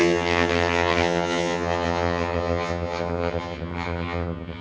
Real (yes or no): no